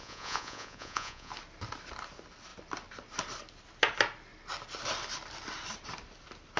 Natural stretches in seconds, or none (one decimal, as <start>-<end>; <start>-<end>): 1.3-6.6